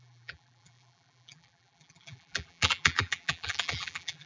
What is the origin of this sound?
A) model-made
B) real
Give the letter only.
A